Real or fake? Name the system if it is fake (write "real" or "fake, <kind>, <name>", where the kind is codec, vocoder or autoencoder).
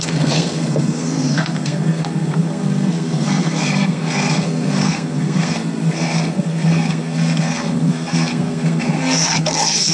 fake, codec, SNAC